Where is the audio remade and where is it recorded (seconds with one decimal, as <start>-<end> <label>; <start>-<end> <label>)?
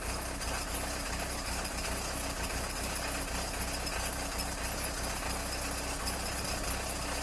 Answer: 0.0-7.2 recorded